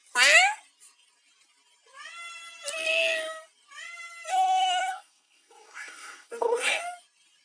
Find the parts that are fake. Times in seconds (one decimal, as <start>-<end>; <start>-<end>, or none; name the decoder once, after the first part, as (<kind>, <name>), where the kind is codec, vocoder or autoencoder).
4.3-6.8 (codec, SNAC)